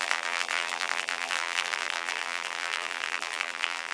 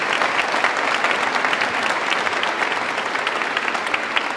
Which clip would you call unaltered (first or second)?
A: second